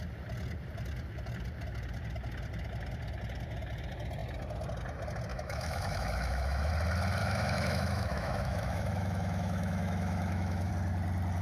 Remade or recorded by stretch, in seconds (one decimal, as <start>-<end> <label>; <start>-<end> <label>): 0.0-5.3 recorded; 5.3-6.7 remade; 6.7-7.2 recorded; 7.2-10.7 remade; 10.7-11.4 recorded